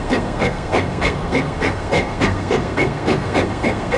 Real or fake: fake